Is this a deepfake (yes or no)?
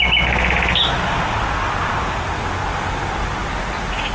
no